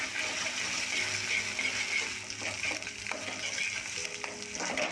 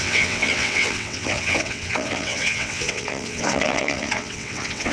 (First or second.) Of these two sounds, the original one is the first